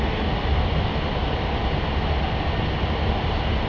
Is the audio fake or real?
real